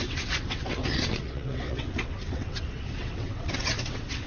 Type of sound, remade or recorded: remade